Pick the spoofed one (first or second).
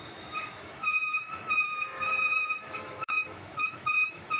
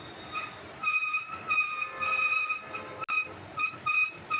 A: first